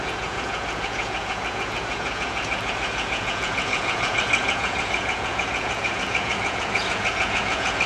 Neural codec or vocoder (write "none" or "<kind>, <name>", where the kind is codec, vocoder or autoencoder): vocoder, Vocos